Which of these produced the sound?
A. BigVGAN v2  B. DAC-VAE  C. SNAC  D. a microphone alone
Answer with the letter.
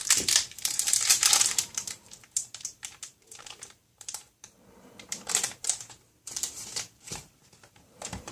A